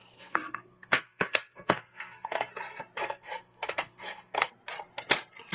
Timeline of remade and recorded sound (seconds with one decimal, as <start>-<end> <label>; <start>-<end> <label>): 0.0-2.5 remade; 2.5-3.0 recorded; 3.0-4.5 remade; 4.5-5.5 recorded